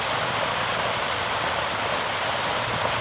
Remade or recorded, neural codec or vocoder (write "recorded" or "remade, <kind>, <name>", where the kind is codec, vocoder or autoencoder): recorded